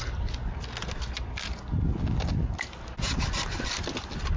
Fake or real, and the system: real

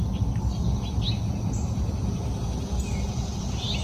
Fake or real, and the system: real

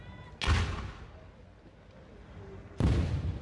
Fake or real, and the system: real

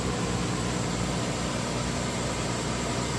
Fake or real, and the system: fake, vocoder, BigVGAN v2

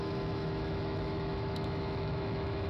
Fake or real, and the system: fake, autoencoder, DAC-VAE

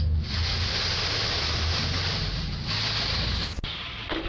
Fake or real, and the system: fake, vocoder, BigVGAN v2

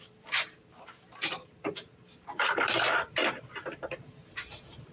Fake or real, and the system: fake, vocoder, BigVGAN v2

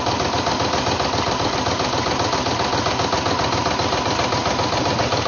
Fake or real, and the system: real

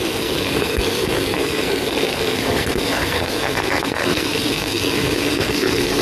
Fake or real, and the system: fake, codec, SNAC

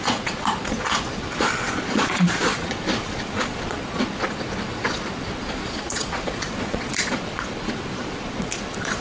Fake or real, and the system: fake, vocoder, Vocos